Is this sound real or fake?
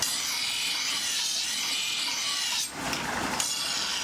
real